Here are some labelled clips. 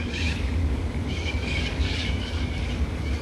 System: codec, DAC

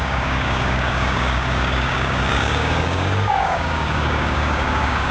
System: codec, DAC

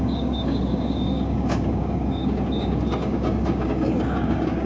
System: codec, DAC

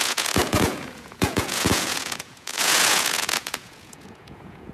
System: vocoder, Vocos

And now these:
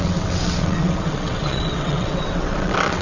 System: vocoder, WaveNeXt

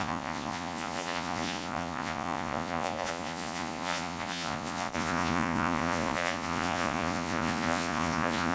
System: vocoder, Vocos